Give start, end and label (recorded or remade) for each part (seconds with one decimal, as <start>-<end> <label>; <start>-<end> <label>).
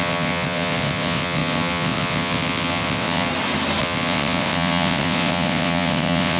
0.0-3.3 remade; 3.3-3.8 recorded; 3.8-6.4 remade